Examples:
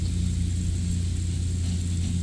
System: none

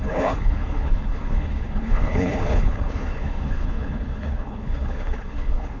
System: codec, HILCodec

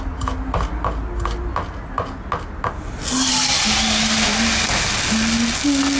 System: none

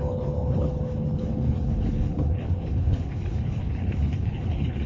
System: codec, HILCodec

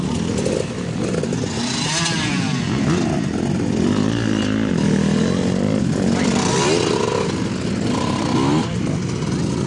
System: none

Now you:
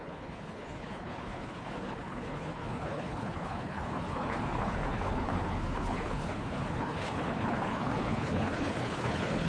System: codec, HILCodec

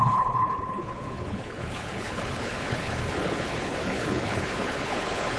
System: codec, HILCodec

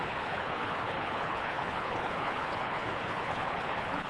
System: codec, HILCodec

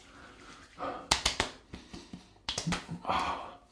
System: none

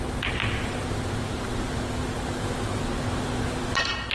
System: none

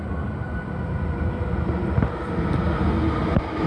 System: none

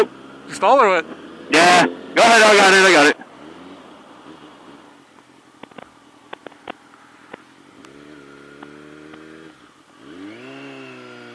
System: none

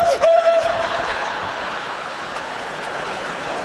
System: codec, HILCodec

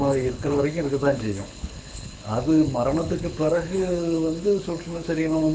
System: codec, HILCodec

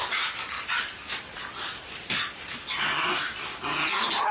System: none